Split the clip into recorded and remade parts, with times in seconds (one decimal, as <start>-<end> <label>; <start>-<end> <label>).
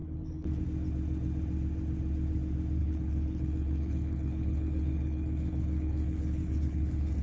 0.0-0.6 remade; 0.6-2.8 recorded; 2.8-7.2 remade